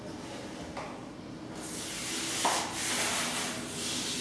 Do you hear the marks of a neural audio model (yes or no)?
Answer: no